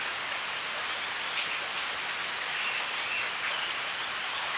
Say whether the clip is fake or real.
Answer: real